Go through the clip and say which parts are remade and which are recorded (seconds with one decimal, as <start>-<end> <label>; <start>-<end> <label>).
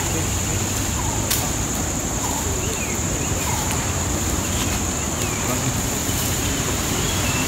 0.0-0.5 recorded; 0.5-4.8 remade; 4.8-6.0 recorded; 6.0-7.5 remade